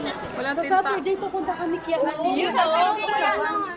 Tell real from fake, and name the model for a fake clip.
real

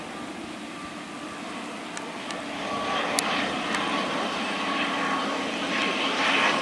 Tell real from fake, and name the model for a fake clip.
real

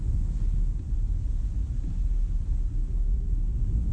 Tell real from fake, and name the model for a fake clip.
real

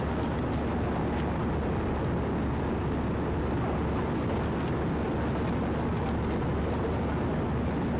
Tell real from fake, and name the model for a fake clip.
real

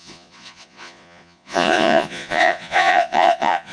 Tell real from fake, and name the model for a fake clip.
fake, vocoder, Vocos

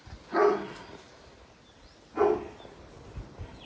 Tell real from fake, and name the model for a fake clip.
real